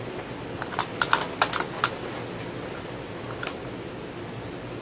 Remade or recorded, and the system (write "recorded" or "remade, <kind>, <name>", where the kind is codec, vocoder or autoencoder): recorded